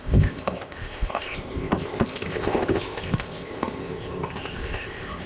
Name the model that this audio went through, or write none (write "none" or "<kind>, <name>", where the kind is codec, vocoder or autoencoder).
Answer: codec, ZipCodec